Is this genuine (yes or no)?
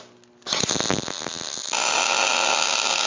yes